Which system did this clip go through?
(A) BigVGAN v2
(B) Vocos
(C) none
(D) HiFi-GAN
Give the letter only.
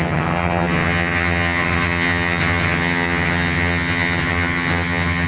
D